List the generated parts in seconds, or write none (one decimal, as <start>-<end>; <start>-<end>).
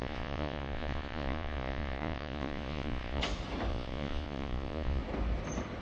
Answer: 0.0-3.2; 3.7-5.0